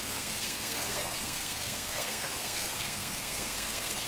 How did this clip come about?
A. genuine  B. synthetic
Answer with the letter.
B